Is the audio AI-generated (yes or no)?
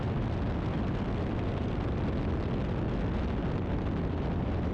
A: no